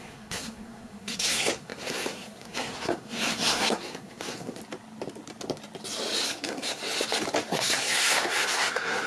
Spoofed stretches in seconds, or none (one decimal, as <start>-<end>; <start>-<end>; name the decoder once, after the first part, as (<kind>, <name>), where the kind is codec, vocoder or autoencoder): 0.0-4.6 (codec, SNAC); 6.2-6.8; 7.5-9.1